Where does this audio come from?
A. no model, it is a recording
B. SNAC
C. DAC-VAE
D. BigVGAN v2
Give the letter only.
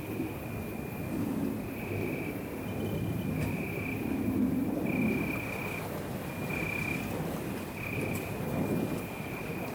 A